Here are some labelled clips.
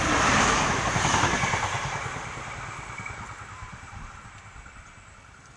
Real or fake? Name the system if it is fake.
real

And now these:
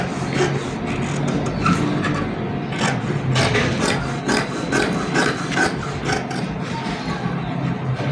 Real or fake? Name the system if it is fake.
real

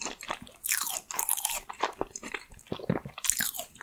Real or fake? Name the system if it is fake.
fake, vocoder, BigVGAN v2